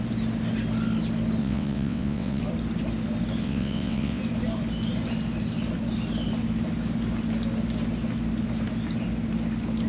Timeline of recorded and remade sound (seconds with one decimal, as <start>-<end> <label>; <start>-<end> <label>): 0.0-1.4 recorded; 1.4-2.4 remade; 2.4-3.4 recorded; 3.4-4.2 remade; 4.2-9.9 recorded